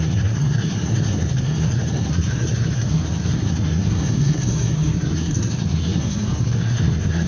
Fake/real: fake